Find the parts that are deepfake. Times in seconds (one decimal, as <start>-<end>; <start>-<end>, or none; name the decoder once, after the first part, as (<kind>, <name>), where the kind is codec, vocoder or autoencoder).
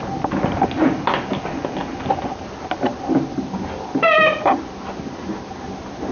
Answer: none